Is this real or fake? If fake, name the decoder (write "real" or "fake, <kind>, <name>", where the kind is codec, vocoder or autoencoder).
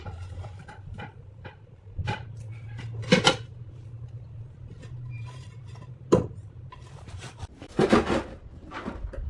fake, vocoder, BigVGAN v2